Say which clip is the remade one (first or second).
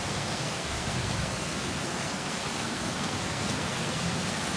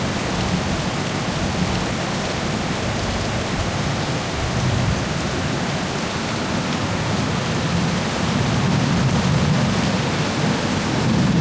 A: first